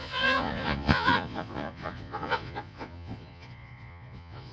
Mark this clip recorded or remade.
remade